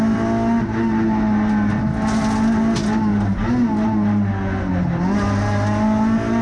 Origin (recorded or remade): recorded